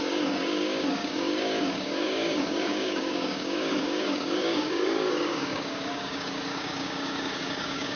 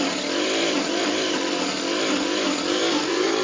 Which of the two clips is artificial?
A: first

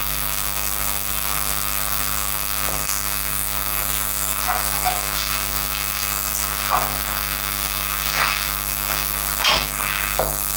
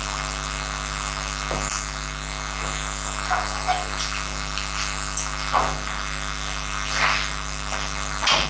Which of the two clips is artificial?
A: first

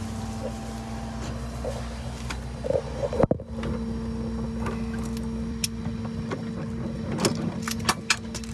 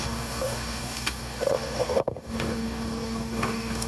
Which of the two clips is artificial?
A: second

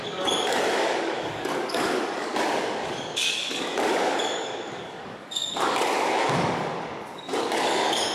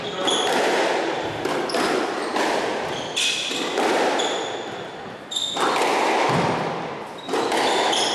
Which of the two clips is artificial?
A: first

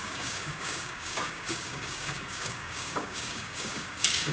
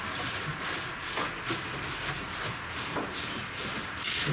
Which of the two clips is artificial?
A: first